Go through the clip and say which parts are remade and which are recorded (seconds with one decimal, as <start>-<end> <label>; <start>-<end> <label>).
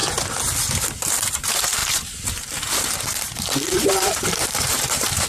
0.0-1.4 recorded; 1.4-1.8 remade; 1.8-2.8 recorded; 2.8-5.3 remade